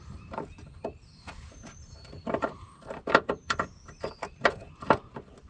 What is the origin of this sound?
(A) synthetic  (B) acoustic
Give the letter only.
A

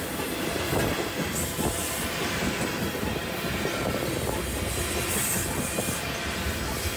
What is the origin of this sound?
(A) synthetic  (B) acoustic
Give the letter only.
B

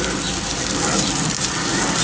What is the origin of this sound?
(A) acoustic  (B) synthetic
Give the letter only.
B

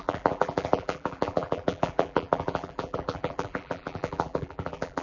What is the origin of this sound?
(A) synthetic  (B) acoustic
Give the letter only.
A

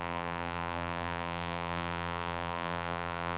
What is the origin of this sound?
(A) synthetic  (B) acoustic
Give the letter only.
A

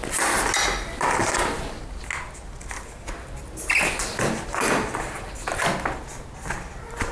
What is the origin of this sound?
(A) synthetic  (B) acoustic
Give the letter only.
B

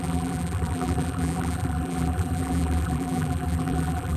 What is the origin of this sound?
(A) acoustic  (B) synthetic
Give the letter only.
B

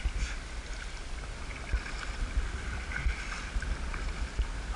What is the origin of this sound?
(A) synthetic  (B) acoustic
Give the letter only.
B